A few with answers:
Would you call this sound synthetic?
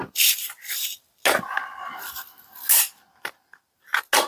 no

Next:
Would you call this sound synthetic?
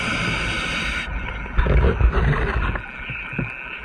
no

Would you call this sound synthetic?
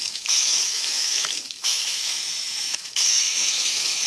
yes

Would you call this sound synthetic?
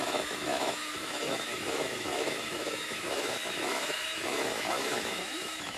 yes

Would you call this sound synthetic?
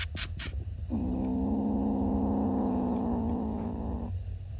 no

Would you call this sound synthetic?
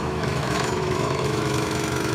yes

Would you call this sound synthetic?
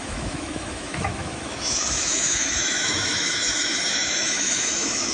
yes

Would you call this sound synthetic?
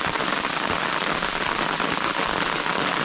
no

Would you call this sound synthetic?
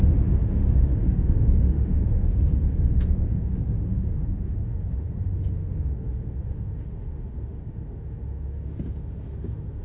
yes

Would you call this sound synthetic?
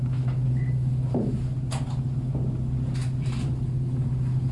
no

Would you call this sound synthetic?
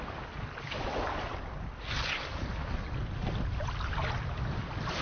no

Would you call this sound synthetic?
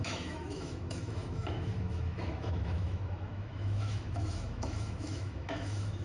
yes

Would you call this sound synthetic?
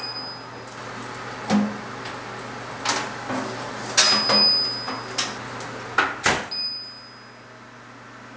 no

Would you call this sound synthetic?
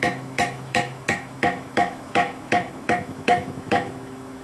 yes